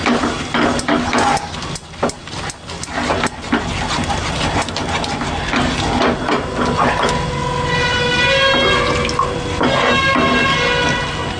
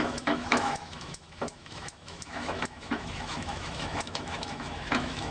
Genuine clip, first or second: first